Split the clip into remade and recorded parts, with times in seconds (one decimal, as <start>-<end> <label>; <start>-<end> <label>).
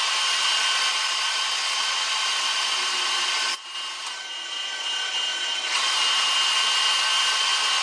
0.0-1.6 recorded; 1.6-2.1 remade; 2.1-7.8 recorded